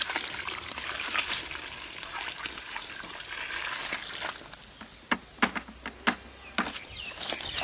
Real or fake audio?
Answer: real